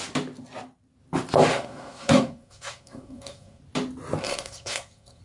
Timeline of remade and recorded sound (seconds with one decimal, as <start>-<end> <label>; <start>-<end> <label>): 0.0-1.5 recorded; 1.5-3.6 remade; 3.6-4.2 recorded; 4.2-5.2 remade